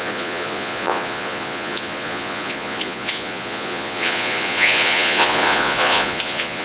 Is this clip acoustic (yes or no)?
no